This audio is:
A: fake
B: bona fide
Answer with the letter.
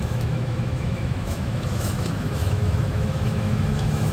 A